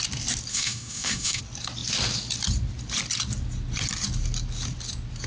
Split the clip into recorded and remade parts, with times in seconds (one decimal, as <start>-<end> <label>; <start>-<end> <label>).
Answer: 0.0-0.5 recorded; 0.5-1.4 remade; 1.4-5.3 recorded